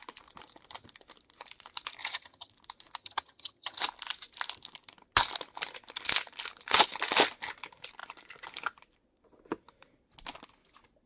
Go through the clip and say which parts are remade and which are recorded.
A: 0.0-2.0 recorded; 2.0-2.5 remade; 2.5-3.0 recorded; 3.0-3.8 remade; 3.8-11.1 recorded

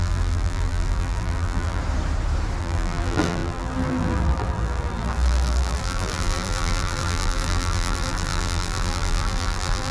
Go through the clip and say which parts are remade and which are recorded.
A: 0.0-1.8 remade; 1.8-2.6 recorded; 2.6-9.9 remade

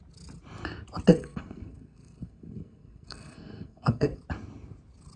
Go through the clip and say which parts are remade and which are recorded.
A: 0.0-1.1 recorded; 1.1-4.2 remade; 4.2-5.2 recorded

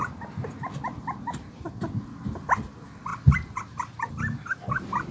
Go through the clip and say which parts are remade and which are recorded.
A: 0.0-5.1 recorded

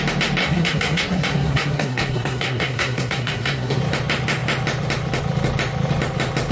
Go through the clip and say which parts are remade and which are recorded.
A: 0.0-0.4 recorded; 0.4-3.8 remade; 3.8-6.5 recorded

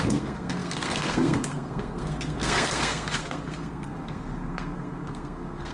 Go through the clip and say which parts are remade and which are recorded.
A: 0.0-5.7 remade